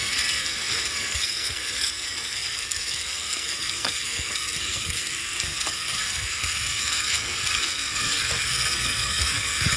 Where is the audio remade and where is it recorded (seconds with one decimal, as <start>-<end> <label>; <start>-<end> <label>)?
0.0-9.8 remade